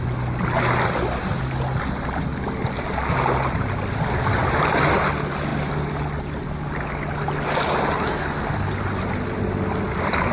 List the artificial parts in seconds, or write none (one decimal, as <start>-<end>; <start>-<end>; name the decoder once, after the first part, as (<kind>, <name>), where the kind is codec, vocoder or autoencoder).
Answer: none